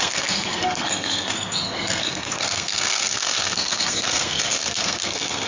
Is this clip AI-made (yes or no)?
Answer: yes